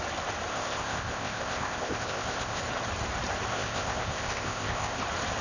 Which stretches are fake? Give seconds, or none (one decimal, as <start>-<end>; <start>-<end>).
0.5-2.6; 3.5-5.0